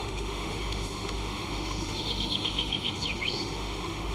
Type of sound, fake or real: fake